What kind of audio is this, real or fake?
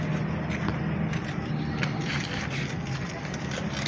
real